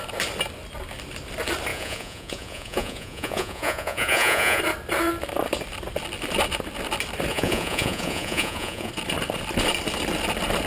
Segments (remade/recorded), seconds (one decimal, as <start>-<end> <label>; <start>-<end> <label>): 0.0-1.7 recorded; 1.7-4.6 remade; 4.6-7.3 recorded; 7.3-8.9 remade; 8.9-10.7 recorded